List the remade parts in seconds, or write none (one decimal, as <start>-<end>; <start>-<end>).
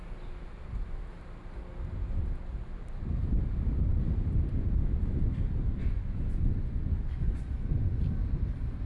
5.8-8.0